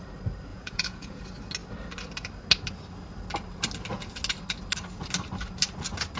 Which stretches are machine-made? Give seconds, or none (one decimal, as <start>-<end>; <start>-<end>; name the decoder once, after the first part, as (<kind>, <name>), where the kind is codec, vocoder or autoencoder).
0.5-1.2 (vocoder, Vocos)